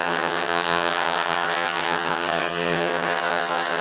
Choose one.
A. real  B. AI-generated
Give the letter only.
B